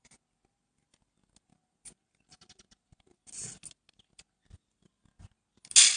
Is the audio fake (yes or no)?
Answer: no